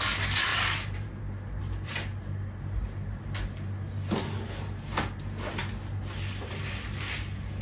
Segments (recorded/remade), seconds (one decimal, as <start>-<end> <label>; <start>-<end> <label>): 0.0-0.5 recorded; 0.5-1.2 remade; 1.2-7.6 recorded